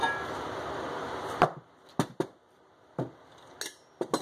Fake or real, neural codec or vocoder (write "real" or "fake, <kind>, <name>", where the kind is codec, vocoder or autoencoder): real